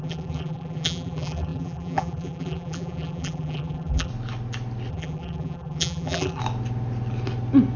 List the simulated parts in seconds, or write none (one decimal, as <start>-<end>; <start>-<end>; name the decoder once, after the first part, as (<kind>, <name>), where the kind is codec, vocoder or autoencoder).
0.0-4.1 (vocoder, BigVGAN v2); 4.9-6.4